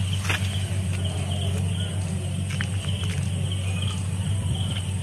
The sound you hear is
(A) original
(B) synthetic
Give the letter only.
A